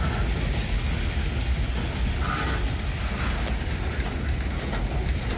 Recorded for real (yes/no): yes